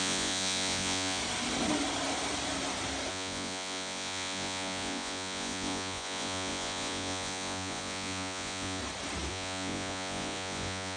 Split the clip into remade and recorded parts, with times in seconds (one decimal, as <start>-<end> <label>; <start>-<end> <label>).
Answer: 0.0-1.2 remade; 1.2-3.1 recorded; 3.1-8.8 remade; 8.8-9.3 recorded; 9.3-11.0 remade

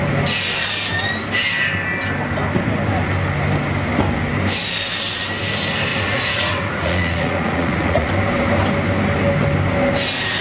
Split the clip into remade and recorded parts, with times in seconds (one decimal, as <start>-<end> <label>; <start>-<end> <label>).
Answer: 0.0-5.9 recorded; 5.9-8.1 remade; 8.1-10.4 recorded